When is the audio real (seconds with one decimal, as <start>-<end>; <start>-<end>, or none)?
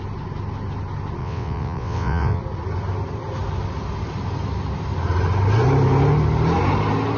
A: 0.0-1.2; 2.4-7.2